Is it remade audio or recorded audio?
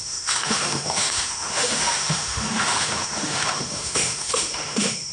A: remade